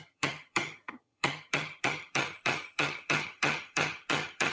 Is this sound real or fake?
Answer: fake